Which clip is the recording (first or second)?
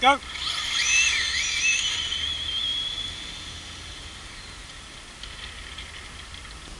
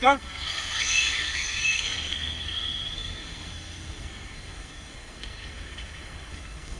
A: first